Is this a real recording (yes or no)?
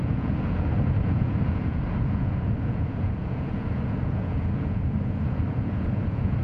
no